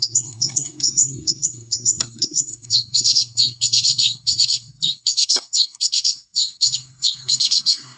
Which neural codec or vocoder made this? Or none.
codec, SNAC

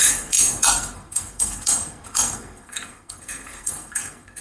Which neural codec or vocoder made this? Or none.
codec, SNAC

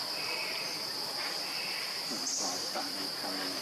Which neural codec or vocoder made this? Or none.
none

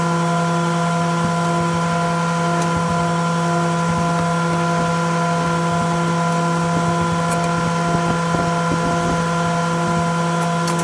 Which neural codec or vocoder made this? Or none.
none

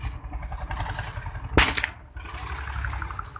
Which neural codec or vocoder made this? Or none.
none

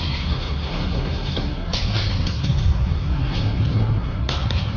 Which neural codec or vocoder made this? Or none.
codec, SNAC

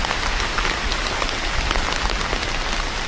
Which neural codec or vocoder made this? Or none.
none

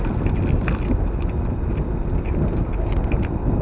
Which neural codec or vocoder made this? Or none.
none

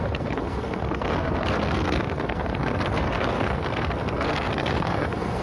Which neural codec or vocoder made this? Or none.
codec, SNAC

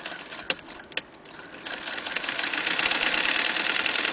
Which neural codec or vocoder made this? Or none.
none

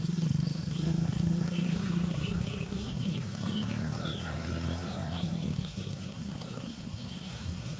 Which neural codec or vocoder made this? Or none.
codec, SNAC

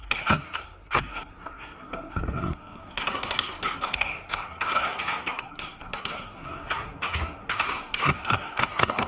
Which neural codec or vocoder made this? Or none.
codec, SNAC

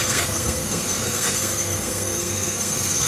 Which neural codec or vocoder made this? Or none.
codec, SNAC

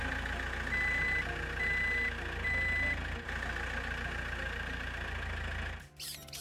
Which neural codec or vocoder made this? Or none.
none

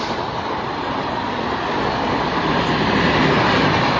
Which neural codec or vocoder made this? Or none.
none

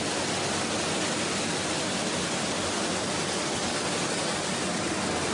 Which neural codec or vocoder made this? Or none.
none